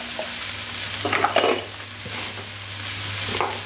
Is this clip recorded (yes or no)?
yes